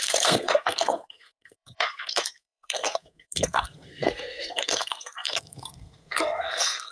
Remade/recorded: remade